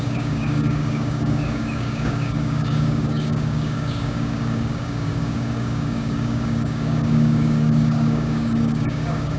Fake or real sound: fake